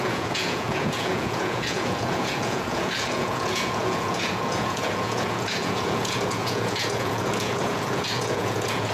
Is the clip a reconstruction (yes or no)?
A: yes